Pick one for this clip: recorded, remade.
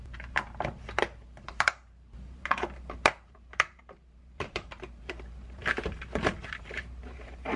remade